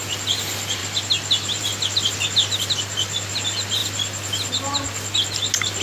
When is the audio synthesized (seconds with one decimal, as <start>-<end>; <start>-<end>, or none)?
none